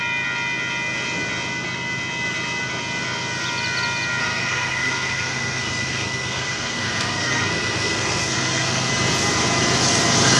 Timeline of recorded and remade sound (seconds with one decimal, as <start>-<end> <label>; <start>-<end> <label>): 0.0-4.2 recorded; 4.2-8.9 remade; 8.9-10.4 recorded